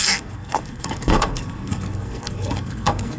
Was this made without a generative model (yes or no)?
no